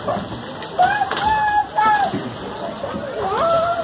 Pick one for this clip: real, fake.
real